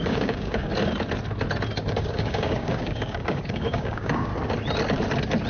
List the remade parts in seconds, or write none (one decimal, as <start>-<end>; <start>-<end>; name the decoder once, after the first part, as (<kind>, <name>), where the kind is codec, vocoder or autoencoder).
0.0-0.7 (codec, DAC); 1.9-4.3